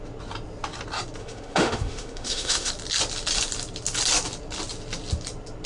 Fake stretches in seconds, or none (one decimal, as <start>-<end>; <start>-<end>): 1.2-2.7